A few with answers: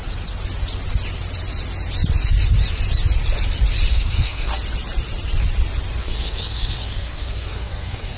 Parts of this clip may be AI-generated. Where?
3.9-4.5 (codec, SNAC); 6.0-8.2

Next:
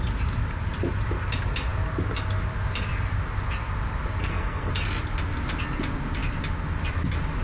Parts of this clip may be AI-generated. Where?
4.2-4.7 (codec, SNAC)